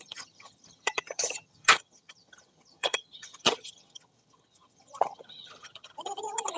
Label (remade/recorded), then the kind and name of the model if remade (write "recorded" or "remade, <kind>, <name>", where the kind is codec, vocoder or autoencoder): remade, vocoder, HiFi-GAN